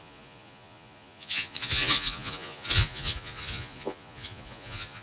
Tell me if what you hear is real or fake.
fake